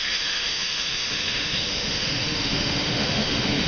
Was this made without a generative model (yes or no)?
no